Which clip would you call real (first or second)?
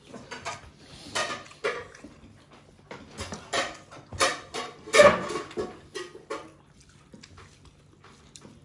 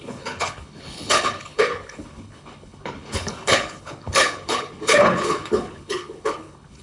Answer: first